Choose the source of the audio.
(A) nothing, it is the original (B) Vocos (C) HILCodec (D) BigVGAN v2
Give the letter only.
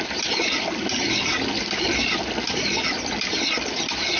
A